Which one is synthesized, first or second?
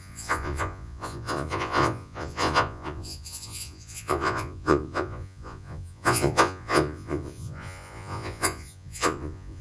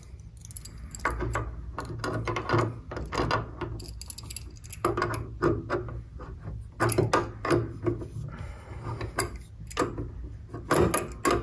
first